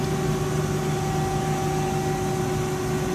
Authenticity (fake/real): real